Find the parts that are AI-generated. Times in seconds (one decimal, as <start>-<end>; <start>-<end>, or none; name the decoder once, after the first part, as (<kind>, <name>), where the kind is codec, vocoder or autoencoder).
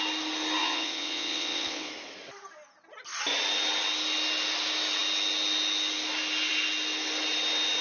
0.6-1.9 (vocoder, WaveNeXt)